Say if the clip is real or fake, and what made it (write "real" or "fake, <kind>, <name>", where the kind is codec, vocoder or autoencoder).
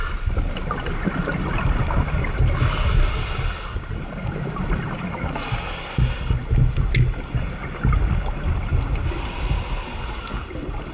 real